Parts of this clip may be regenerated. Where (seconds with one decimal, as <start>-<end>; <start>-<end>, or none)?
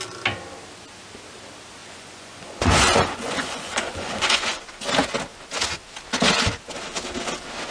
1.8-4.7